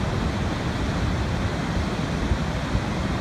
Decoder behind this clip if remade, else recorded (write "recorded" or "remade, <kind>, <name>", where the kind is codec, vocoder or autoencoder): recorded